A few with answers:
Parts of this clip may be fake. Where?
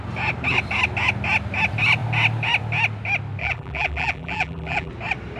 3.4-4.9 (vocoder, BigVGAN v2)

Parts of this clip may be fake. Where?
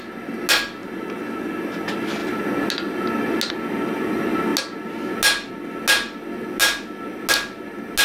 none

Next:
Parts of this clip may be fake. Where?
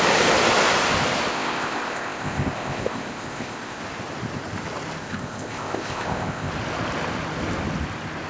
1.3-3.8 (codec, ZipCodec); 5.0-6.5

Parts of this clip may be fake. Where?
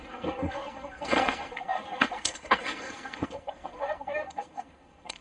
0.0-5.2 (codec, SNAC)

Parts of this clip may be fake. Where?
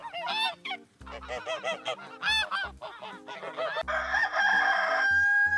none